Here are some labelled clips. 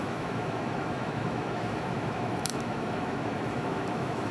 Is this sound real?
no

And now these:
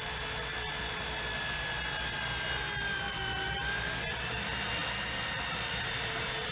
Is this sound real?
yes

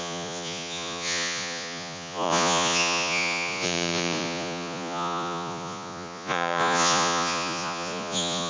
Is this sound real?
no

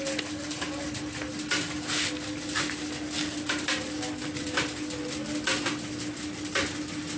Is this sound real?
yes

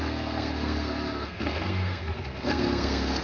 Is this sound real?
no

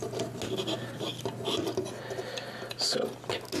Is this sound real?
yes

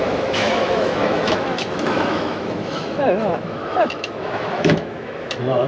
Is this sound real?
no